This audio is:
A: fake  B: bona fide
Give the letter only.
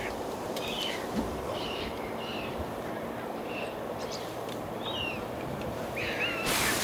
A